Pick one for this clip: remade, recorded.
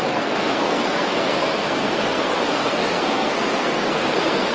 remade